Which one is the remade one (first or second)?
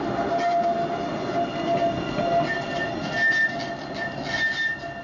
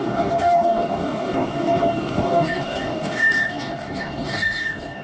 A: second